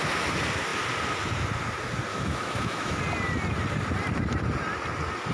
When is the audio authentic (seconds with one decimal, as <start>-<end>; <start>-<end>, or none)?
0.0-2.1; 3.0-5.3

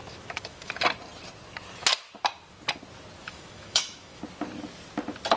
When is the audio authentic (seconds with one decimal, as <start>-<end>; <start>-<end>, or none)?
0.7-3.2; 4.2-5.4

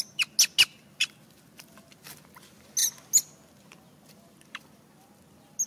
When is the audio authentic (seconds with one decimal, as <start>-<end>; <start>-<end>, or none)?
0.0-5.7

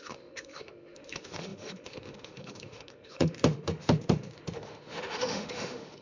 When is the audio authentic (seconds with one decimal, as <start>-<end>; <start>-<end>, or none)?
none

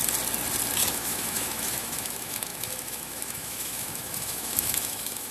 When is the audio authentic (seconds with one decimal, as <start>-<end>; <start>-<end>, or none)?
0.0-0.9

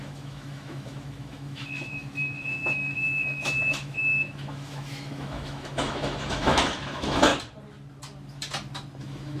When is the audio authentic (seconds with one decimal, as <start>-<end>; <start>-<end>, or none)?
7.3-9.0

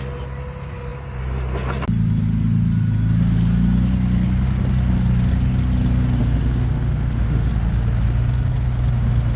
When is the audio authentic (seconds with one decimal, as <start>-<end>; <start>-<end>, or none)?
0.0-6.2; 7.5-9.4